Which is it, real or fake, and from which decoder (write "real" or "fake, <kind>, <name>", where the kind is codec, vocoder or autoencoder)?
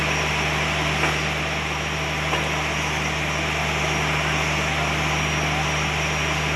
real